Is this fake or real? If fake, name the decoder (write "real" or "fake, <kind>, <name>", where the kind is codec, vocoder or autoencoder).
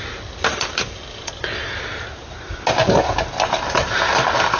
real